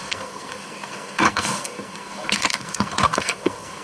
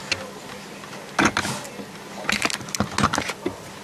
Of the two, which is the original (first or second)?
second